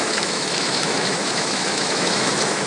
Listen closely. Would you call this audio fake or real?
fake